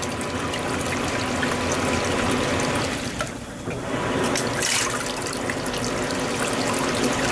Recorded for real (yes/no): yes